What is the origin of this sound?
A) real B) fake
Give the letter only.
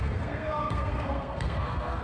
B